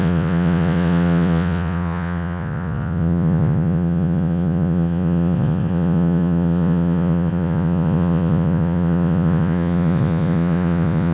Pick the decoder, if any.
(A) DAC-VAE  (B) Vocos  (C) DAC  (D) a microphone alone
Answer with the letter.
B